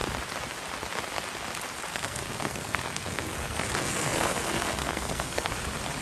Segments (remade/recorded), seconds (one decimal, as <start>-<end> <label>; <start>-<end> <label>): 0.0-1.9 recorded; 1.9-5.5 remade; 5.5-6.0 recorded